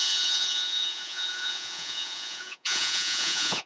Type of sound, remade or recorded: remade